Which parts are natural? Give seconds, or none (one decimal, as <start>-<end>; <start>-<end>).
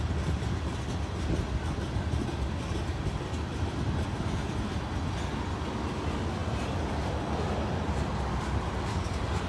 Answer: 0.0-9.5